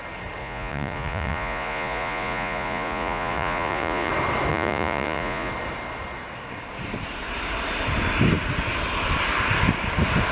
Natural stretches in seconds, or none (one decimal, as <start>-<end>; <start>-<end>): 0.0-0.4; 4.1-4.5; 5.5-10.3